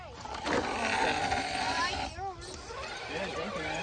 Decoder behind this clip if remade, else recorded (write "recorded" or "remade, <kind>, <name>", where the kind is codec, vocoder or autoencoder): recorded